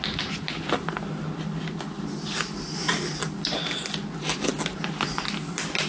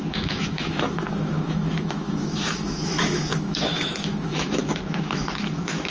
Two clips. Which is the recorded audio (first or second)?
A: first